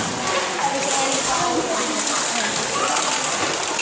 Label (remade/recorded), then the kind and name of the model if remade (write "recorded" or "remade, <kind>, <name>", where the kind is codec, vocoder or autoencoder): recorded